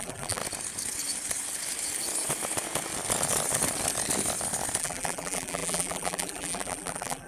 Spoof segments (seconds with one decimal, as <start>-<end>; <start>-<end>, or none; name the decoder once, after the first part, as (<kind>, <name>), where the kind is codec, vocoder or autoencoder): 0.0-0.4 (vocoder, BigVGAN v2); 4.8-7.3